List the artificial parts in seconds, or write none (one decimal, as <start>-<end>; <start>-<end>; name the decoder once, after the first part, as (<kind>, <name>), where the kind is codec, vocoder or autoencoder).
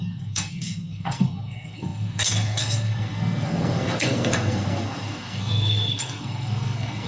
0.0-7.1 (codec, SNAC)